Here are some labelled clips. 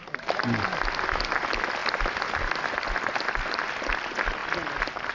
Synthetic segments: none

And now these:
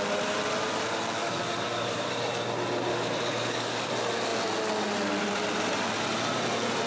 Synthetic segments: 1.2-2.1 (codec, DAC); 2.9-3.9

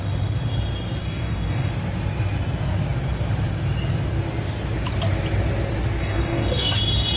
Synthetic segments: 1.0-1.7 (codec, DAC); 6.0-6.8

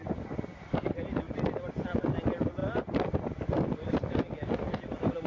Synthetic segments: none

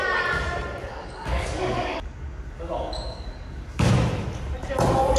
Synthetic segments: 0.8-3.9 (codec, DAC)

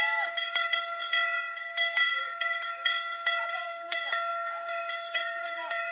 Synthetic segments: 0.0-5.9 (codec, DAC)

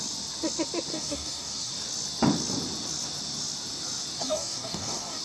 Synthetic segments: 0.9-1.7 (codec, DAC); 4.2-5.2